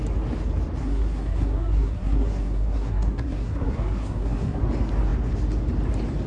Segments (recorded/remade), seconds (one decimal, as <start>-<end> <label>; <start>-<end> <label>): 0.0-0.8 recorded; 0.8-4.6 remade; 4.6-6.3 recorded